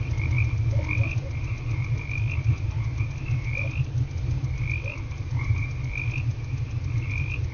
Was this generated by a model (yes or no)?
no